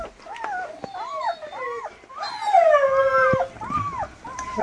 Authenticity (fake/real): real